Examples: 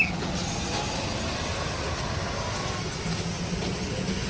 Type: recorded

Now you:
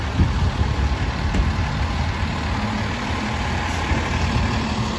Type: recorded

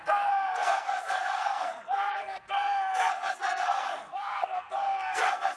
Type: remade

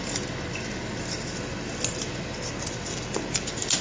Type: recorded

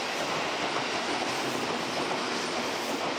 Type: recorded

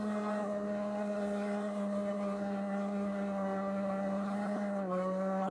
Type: remade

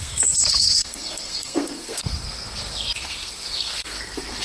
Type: remade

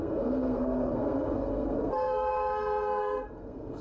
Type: remade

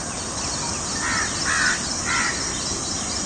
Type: recorded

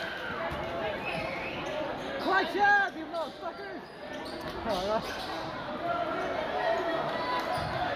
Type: recorded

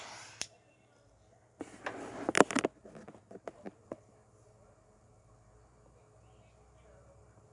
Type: recorded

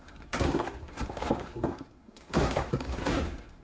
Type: remade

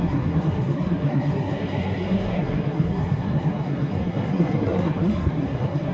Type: remade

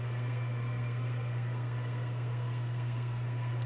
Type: remade